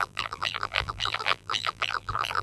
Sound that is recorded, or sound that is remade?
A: remade